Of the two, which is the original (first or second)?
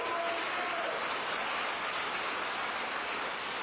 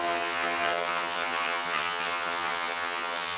first